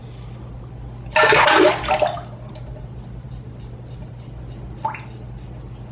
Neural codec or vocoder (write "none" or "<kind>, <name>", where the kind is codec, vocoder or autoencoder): none